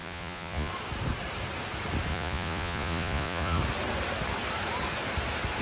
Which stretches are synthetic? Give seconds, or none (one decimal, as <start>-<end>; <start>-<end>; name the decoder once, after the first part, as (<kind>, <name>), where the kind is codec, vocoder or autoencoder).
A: 0.0-0.7 (vocoder, Vocos); 2.1-3.6